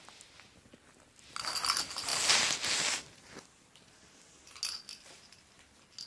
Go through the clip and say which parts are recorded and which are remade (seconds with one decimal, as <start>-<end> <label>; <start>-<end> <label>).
0.0-6.1 recorded